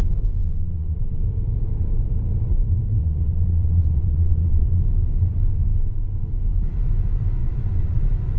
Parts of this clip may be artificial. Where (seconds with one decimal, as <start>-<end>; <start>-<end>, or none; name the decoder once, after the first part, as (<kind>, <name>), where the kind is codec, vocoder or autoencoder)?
0.4-1.2 (vocoder, Vocos); 3.0-4.8; 7.4-8.0